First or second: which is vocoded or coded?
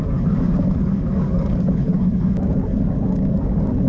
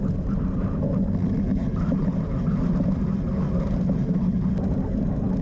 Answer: first